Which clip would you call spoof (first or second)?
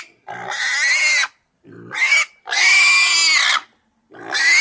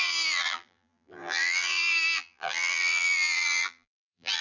second